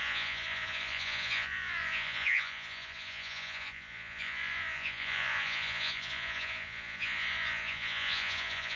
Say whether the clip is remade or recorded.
remade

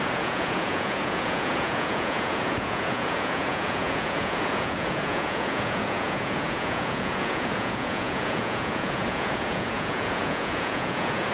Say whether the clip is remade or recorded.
remade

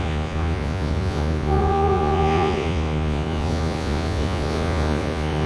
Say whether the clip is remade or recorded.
remade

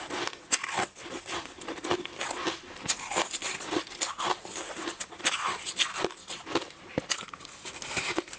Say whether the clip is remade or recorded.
recorded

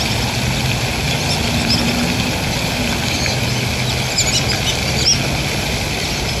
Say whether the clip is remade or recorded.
recorded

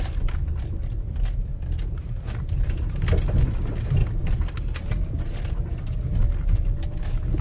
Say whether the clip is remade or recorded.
recorded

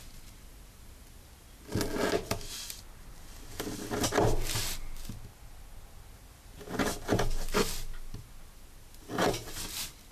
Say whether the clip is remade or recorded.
recorded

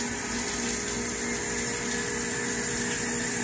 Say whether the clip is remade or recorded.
recorded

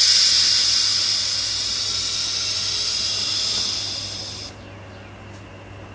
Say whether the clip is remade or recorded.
recorded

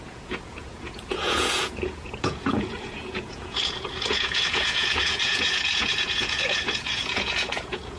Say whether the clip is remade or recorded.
remade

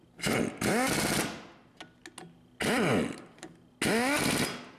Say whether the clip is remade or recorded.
recorded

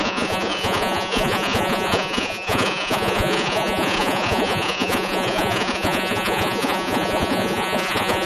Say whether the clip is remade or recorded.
remade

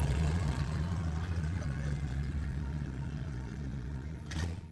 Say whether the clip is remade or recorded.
remade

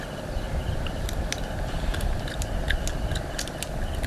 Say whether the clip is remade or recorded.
recorded